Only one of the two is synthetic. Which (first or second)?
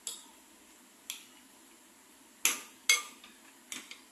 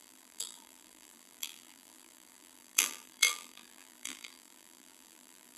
second